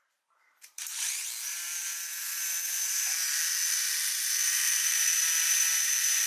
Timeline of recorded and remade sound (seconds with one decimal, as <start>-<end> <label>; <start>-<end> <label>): 0.0-1.9 remade; 1.9-2.7 recorded; 2.7-6.3 remade